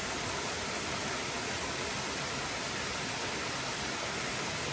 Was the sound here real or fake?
real